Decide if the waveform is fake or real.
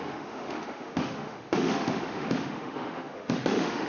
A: fake